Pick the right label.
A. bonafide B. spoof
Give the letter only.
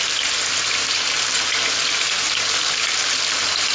A